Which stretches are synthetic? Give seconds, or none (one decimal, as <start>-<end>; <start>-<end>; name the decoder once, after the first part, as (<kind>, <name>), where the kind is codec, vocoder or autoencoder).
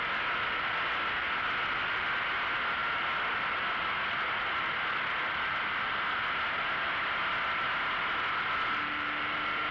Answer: none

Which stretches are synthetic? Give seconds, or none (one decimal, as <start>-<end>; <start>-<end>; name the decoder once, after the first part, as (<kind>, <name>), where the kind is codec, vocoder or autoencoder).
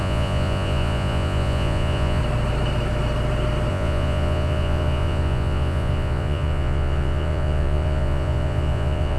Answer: 0.0-2.2 (vocoder, Vocos); 3.7-9.2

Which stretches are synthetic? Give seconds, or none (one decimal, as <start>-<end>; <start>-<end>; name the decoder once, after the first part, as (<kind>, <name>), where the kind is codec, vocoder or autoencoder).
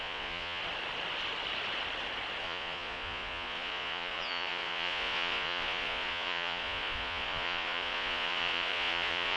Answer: 0.0-0.6 (vocoder, Vocos); 2.4-9.4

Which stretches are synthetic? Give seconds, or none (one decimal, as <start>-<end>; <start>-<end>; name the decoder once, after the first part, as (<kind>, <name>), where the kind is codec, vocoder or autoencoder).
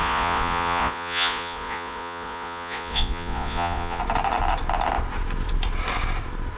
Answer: 0.0-4.0 (vocoder, Vocos)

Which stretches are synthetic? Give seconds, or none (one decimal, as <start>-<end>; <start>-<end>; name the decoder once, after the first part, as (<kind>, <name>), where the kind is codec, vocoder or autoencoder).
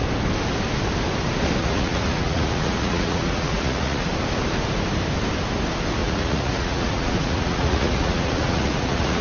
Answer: 1.6-4.1 (vocoder, Vocos); 6.0-9.2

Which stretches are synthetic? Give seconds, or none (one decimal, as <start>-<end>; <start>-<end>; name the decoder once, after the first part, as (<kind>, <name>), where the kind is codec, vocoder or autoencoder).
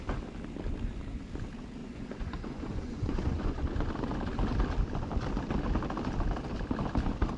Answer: 1.8-3.9 (vocoder, Vocos)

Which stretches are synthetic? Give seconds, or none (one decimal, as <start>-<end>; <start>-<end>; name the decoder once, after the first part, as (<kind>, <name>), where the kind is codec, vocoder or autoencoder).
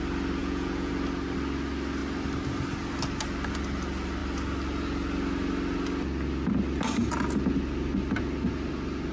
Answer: 0.4-0.9 (vocoder, Vocos)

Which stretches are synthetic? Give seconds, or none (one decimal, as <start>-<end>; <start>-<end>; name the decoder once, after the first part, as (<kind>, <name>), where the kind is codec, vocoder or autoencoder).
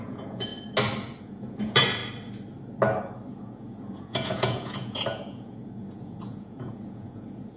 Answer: 0.0-0.5 (vocoder, Vocos); 1.2-2.0; 3.3-7.6